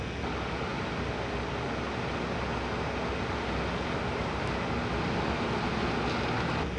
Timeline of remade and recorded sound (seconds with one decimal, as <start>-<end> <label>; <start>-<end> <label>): 0.0-6.8 recorded